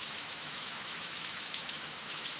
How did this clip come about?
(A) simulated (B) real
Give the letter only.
A